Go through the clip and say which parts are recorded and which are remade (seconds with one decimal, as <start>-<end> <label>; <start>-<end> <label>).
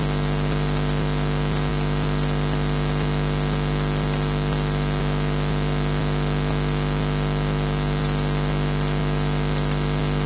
0.0-10.3 recorded